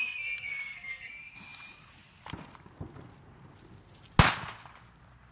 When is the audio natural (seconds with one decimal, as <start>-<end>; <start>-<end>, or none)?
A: 1.1-5.3